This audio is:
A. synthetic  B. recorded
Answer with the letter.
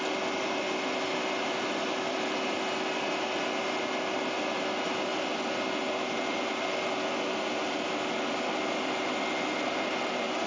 B